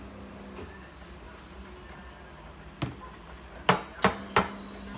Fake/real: real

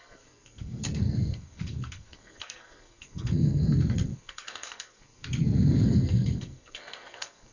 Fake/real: fake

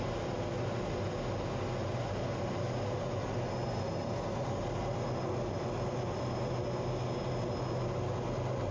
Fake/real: real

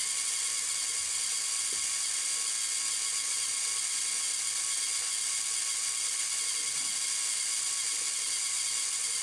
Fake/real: real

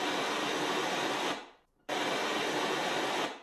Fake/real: real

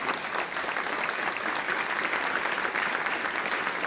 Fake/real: real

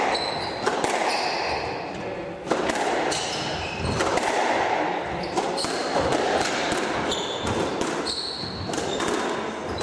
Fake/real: real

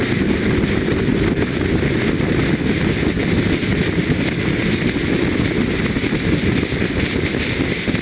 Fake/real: real